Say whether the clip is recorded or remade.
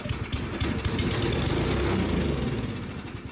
recorded